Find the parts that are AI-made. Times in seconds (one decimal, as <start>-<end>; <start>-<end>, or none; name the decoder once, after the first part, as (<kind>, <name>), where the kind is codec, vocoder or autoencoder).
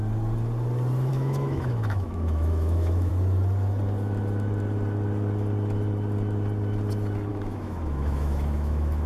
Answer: 1.1-3.1 (autoencoder, DAC-VAE); 7.3-9.1